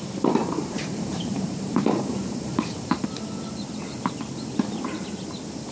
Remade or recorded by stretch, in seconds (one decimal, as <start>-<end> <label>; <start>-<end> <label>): 0.0-0.4 recorded; 0.4-3.0 remade; 3.0-5.7 recorded